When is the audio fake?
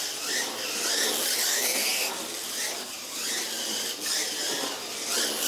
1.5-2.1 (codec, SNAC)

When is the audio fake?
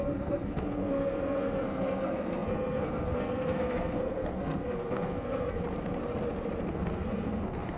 0.0-5.6 (codec, SNAC); 6.7-7.8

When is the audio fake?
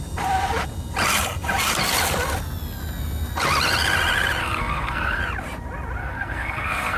4.4-5.2 (codec, SNAC); 6.0-7.0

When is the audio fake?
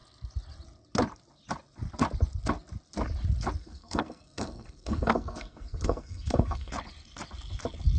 3.6-6.7 (codec, SNAC)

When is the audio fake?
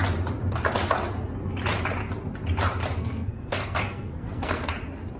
3.0-4.7 (codec, SNAC)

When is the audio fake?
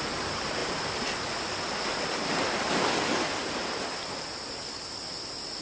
none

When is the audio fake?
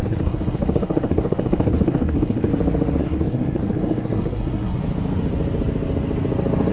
0.0-2.5 (codec, SNAC); 3.0-4.8